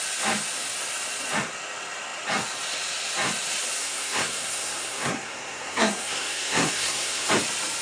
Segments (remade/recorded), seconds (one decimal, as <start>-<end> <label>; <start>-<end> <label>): 0.0-3.8 recorded; 3.8-7.3 remade; 7.3-7.8 recorded